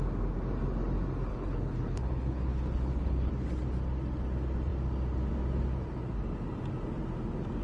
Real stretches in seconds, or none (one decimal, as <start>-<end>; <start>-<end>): 0.0-1.3; 3.3-7.6